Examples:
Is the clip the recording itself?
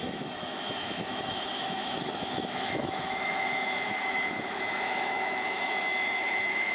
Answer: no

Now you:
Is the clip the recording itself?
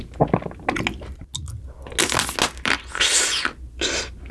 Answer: yes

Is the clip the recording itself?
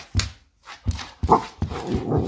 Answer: yes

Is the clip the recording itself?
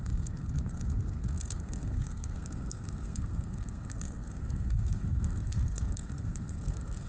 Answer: no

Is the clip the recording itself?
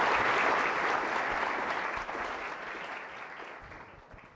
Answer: yes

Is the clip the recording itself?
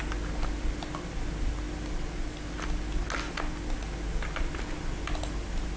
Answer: yes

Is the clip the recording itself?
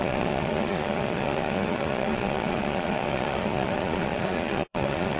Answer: no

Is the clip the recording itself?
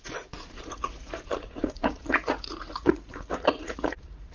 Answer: no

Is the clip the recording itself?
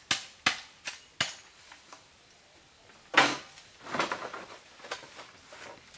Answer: yes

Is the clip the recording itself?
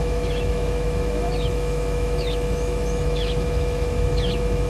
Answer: no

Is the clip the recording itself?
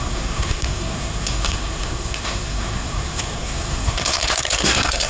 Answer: no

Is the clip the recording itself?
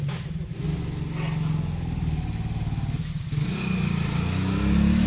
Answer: yes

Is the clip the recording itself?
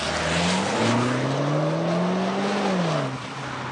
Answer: yes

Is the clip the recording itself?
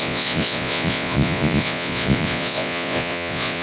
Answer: no